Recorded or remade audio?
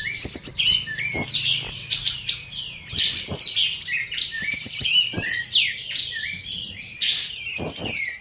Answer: remade